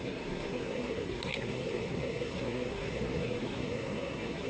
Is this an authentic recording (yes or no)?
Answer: no